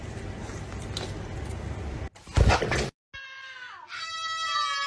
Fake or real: real